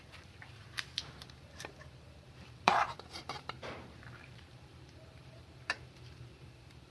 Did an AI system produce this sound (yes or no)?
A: yes